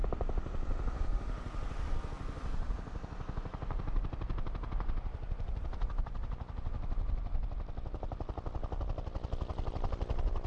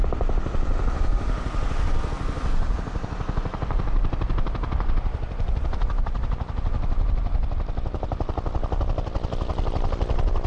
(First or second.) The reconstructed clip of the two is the second